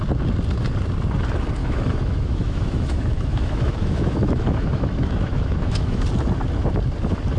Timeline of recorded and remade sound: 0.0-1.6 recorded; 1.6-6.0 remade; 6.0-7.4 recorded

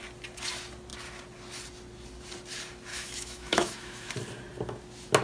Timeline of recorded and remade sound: 0.0-2.9 recorded; 2.9-4.1 remade; 4.1-5.2 recorded

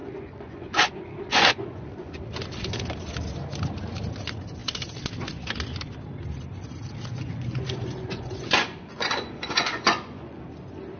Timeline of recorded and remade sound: 0.0-2.2 remade; 2.2-7.1 recorded; 7.1-10.4 remade; 10.4-11.0 recorded

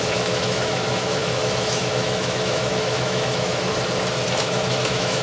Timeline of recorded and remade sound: 0.0-3.7 remade; 3.7-4.4 recorded; 4.4-5.2 remade

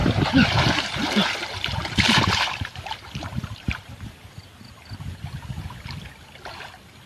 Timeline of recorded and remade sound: 0.0-4.3 remade; 4.3-7.1 recorded